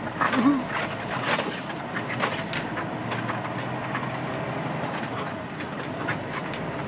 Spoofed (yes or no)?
yes